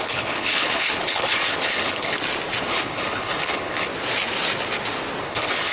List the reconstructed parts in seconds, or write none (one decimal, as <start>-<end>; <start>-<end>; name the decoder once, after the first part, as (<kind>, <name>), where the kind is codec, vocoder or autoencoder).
0.0-2.1 (codec, HILCodec); 2.6-3.9; 5.2-5.7